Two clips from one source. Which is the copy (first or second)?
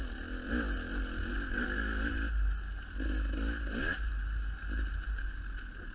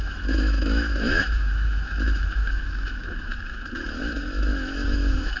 second